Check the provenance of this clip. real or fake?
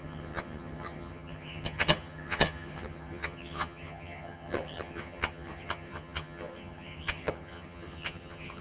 fake